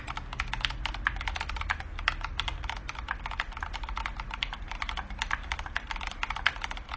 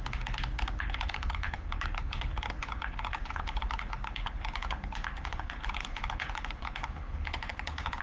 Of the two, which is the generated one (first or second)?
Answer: second